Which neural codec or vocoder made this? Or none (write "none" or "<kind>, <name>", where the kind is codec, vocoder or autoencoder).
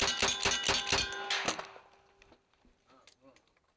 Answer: none